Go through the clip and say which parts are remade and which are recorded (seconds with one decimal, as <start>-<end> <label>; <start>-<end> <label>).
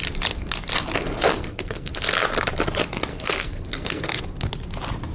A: 0.0-1.3 recorded; 1.3-1.9 remade; 1.9-3.1 recorded; 3.1-4.2 remade; 4.2-5.1 recorded